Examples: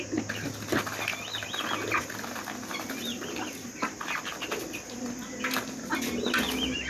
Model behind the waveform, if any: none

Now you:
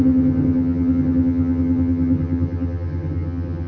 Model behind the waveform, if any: vocoder, HiFi-GAN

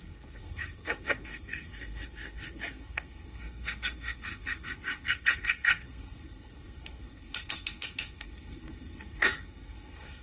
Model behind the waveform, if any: codec, SNAC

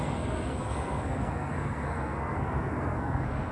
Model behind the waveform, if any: codec, SNAC